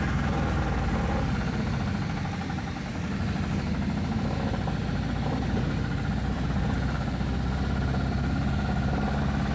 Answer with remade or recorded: recorded